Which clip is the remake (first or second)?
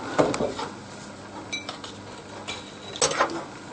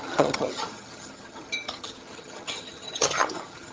second